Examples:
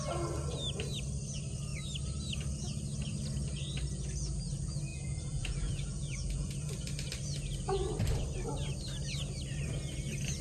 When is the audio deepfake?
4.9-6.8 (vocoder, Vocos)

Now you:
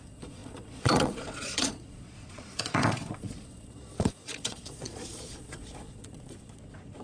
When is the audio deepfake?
0.0-7.0 (vocoder, Vocos)

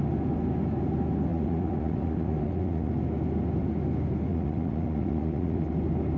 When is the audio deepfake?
1.3-2.9 (vocoder, Vocos); 4.3-5.7

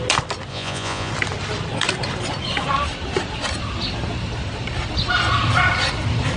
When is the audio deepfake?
0.5-1.1 (vocoder, Vocos)